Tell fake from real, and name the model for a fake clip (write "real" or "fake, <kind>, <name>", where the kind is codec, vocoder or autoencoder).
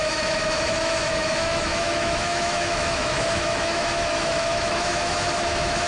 fake, autoencoder, DAC-VAE